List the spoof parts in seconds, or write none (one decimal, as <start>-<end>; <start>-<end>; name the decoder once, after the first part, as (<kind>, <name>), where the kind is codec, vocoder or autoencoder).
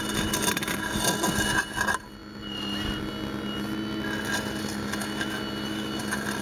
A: none